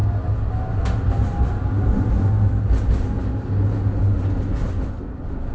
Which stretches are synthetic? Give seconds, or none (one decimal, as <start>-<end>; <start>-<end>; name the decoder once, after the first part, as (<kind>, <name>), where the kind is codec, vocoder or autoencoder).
none

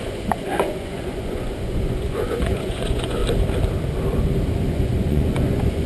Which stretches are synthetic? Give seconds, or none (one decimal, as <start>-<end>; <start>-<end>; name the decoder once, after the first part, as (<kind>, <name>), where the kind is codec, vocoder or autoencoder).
0.0-3.2 (vocoder, Vocos); 4.7-5.9